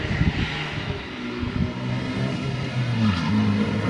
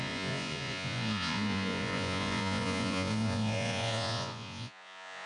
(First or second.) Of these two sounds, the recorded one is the first